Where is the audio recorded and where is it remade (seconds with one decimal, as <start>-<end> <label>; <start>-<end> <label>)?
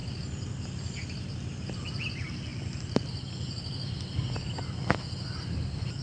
0.0-6.0 recorded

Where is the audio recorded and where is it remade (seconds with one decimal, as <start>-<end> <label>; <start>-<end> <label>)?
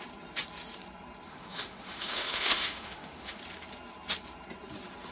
0.0-1.3 recorded; 1.3-3.4 remade; 3.4-5.1 recorded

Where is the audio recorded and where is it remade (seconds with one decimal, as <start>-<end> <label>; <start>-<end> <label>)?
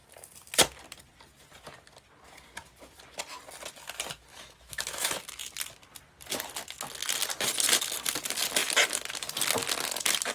0.0-4.3 recorded; 4.3-5.1 remade; 5.1-10.3 recorded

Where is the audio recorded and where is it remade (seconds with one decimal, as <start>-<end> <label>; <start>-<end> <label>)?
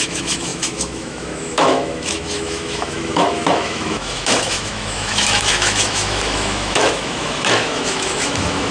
0.0-8.7 remade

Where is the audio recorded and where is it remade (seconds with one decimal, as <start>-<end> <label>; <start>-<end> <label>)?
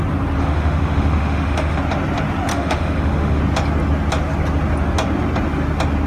0.0-0.4 recorded; 0.4-1.8 remade; 1.8-2.5 recorded; 2.5-3.4 remade; 3.4-6.1 recorded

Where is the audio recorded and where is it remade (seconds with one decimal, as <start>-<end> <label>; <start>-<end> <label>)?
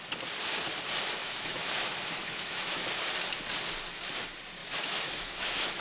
0.0-1.2 recorded; 1.2-3.0 remade; 3.0-4.6 recorded; 4.6-5.8 remade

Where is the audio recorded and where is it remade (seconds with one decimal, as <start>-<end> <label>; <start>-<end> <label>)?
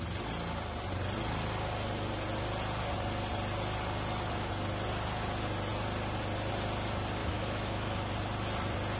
0.0-7.2 recorded; 7.2-8.1 remade; 8.1-9.0 recorded